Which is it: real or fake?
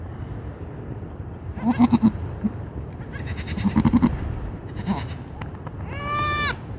fake